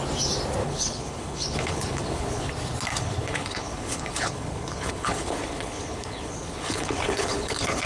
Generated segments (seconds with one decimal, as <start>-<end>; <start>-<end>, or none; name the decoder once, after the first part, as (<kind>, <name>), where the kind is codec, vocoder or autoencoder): 0.6-2.5 (codec, HILCodec); 2.9-7.9